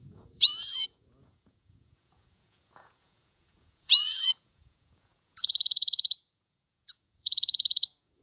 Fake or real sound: fake